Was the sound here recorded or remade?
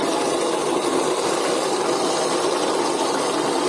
recorded